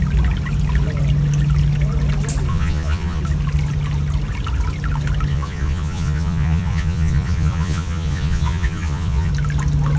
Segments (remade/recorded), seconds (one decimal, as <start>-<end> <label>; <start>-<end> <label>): 0.0-2.5 recorded; 2.5-3.2 remade; 3.2-5.3 recorded; 5.3-9.3 remade; 9.3-10.0 recorded